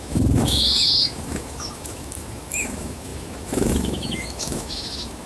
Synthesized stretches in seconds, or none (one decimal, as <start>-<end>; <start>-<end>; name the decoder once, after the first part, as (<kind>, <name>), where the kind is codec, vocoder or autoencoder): 0.0-5.3 (autoencoder, DAC-VAE)